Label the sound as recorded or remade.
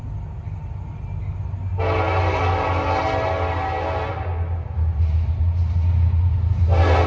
recorded